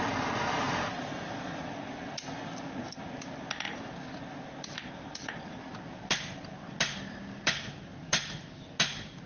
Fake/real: real